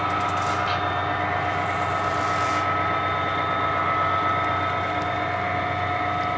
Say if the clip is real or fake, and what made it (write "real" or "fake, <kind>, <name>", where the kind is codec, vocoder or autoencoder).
real